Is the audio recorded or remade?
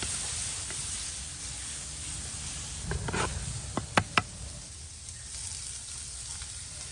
recorded